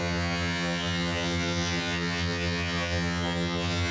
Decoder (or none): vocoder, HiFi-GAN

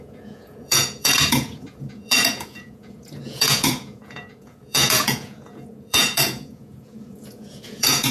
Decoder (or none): vocoder, Vocos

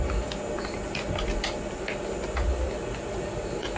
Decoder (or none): none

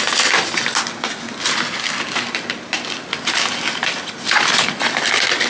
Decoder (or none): none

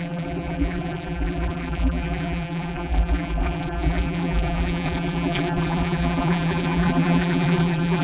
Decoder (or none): vocoder, BigVGAN v2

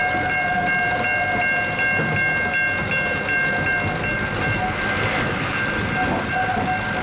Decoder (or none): none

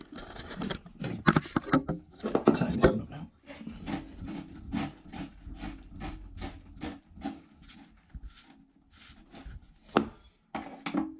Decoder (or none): none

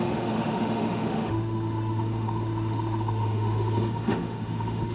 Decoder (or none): autoencoder, DAC-VAE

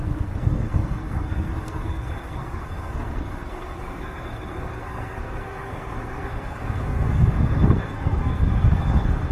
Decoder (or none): codec, SNAC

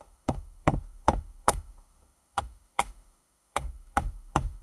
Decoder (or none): autoencoder, DAC-VAE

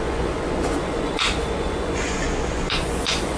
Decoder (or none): vocoder, Vocos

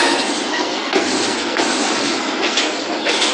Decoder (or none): codec, SNAC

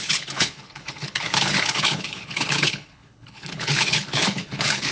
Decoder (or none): codec, HILCodec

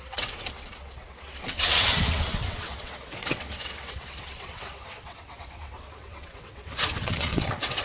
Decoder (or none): vocoder, WaveNeXt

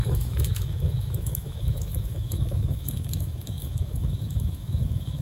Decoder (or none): autoencoder, DAC-VAE